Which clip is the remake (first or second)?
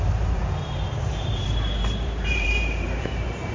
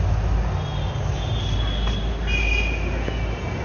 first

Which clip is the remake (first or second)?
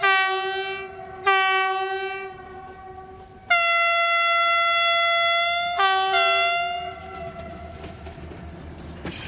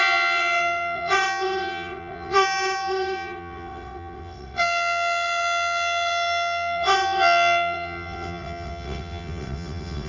second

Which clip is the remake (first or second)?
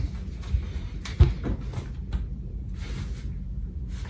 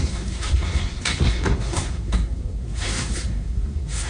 second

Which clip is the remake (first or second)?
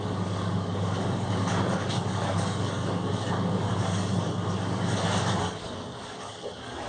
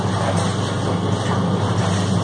first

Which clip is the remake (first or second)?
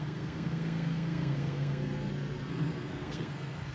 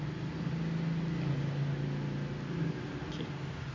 first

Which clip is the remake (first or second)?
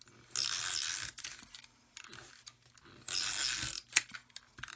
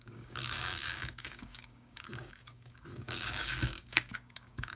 second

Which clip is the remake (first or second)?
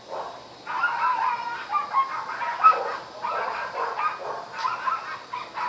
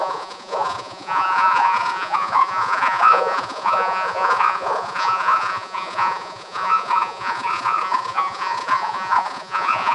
second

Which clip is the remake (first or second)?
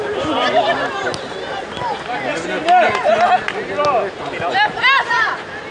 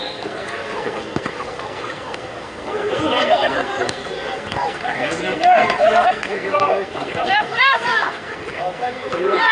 second